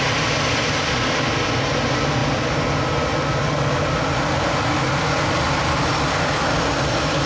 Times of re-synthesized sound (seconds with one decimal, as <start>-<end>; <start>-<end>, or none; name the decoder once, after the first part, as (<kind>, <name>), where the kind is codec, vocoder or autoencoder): none